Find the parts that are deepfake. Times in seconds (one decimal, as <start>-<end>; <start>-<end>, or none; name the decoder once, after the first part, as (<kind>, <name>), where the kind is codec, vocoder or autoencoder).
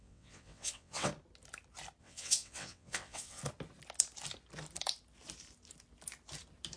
0.0-1.1 (vocoder, WaveNeXt); 2.0-3.4